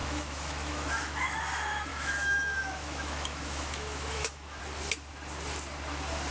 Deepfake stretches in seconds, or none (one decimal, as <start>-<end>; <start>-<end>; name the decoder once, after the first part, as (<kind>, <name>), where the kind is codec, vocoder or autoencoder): 0.0-1.4 (autoencoder, DAC-VAE); 1.9-4.6